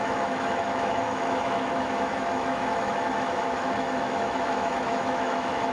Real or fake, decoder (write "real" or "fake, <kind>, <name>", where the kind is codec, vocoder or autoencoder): fake, autoencoder, DAC-VAE